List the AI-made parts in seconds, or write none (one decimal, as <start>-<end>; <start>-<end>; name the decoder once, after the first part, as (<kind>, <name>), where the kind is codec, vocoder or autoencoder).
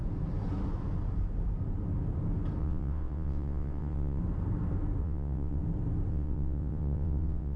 2.6-4.2 (vocoder, WaveNeXt); 5.0-5.6; 6.1-7.6